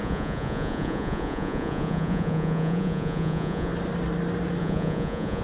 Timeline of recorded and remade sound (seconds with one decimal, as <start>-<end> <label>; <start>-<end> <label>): 0.0-3.7 remade; 3.7-4.6 recorded; 4.6-5.4 remade